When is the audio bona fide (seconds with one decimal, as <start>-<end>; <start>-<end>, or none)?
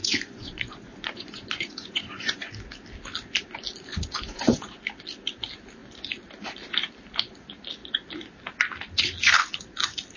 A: 2.5-3.9; 4.8-10.2